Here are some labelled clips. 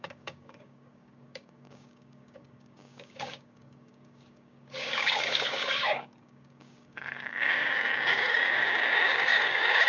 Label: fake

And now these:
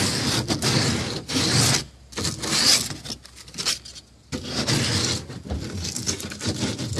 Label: real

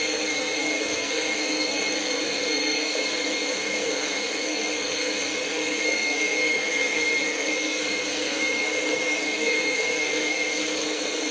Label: fake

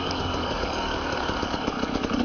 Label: fake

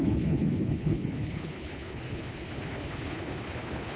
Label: fake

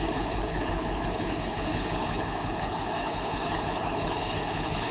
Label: fake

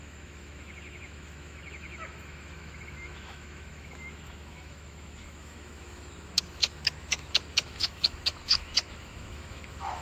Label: fake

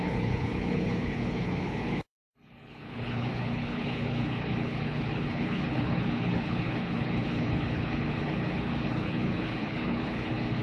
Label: fake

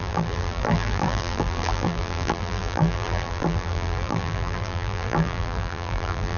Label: fake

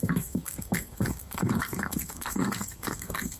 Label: fake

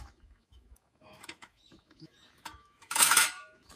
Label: fake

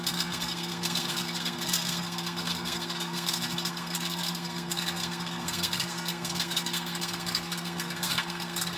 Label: fake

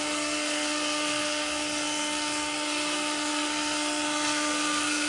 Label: fake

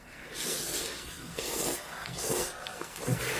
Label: fake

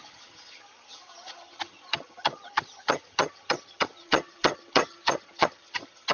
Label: fake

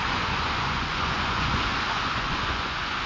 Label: fake